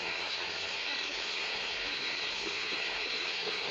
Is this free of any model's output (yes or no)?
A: no